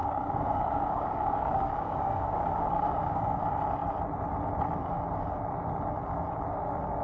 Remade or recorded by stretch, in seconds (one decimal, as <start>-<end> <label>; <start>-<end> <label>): 0.0-3.4 remade; 3.4-7.0 recorded